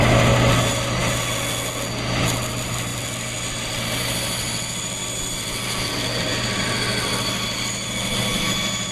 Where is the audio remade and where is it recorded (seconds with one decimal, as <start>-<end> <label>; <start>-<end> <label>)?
0.0-1.0 remade; 1.0-2.2 recorded; 2.2-8.9 remade